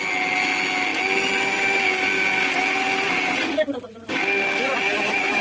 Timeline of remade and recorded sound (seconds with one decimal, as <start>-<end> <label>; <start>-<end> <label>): 0.0-5.4 recorded